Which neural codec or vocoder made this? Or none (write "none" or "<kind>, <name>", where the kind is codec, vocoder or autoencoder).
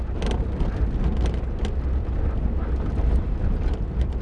none